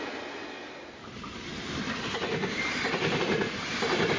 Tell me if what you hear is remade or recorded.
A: recorded